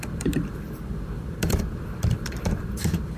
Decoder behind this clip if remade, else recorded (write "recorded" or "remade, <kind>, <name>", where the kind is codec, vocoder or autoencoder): remade, vocoder, BigVGAN v2